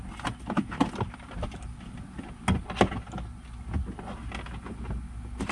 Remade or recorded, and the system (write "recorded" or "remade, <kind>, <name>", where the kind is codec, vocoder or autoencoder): recorded